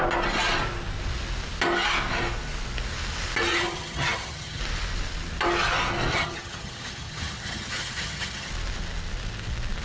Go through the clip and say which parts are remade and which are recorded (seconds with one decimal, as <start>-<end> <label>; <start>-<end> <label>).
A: 0.0-3.5 recorded; 3.5-4.6 remade; 4.6-6.1 recorded; 6.1-8.5 remade; 8.5-9.8 recorded